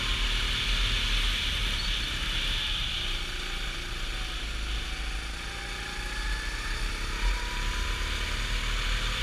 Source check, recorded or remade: recorded